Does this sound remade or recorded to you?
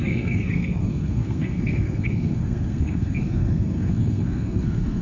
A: remade